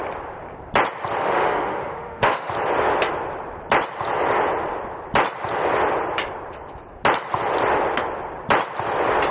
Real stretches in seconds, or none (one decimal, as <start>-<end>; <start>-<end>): 0.0-1.2; 2.5-9.3